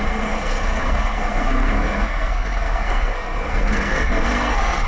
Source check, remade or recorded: remade